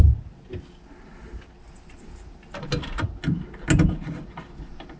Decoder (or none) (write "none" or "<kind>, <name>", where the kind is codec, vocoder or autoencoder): none